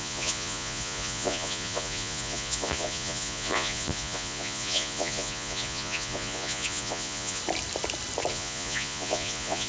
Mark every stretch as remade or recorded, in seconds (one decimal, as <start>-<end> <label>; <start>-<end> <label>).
0.0-7.4 remade; 7.4-8.3 recorded; 8.3-9.7 remade